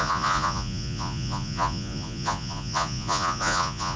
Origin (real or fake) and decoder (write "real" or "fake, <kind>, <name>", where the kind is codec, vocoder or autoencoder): fake, vocoder, Vocos